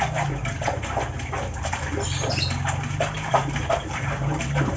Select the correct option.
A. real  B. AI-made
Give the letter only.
A